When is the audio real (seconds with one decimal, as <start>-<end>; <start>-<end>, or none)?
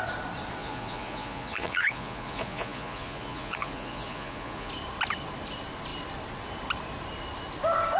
0.0-0.6; 4.7-8.0